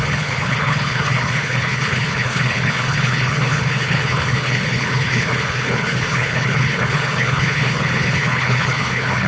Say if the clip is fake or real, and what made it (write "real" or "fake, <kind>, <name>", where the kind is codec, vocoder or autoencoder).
fake, codec, HILCodec